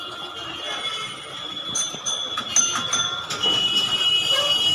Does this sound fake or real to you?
real